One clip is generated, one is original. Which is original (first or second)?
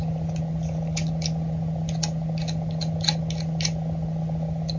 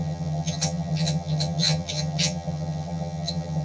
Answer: first